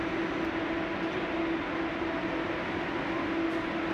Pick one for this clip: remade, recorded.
recorded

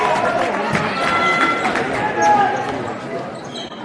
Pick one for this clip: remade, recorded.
recorded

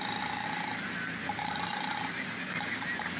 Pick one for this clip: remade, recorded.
recorded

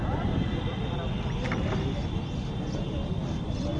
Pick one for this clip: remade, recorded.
recorded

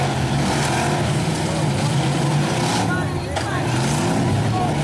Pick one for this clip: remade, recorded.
recorded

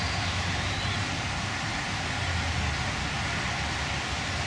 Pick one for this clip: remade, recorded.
recorded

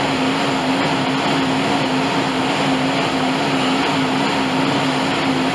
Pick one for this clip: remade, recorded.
recorded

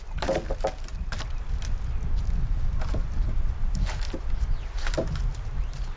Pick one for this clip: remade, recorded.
recorded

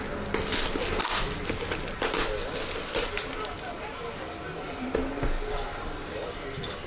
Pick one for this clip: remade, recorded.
recorded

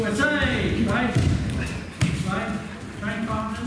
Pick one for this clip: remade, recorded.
recorded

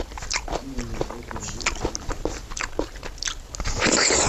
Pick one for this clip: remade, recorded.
recorded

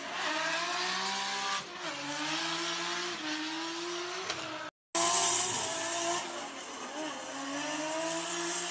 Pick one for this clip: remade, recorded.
recorded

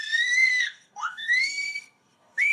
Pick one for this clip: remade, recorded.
remade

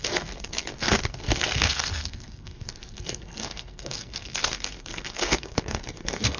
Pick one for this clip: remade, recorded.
remade